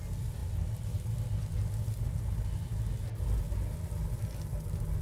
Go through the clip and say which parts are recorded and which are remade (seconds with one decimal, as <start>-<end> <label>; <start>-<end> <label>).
0.0-5.0 recorded